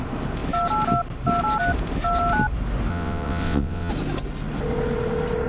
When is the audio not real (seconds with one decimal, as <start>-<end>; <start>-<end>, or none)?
2.9-3.9